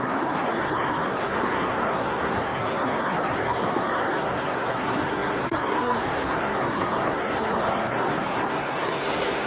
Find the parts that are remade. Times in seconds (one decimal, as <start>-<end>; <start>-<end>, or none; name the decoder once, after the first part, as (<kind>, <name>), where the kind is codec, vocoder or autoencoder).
0.0-9.5 (codec, SNAC)